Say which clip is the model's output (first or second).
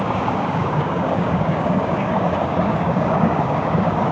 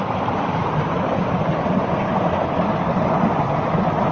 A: first